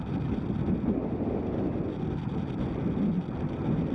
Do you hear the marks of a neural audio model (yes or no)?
no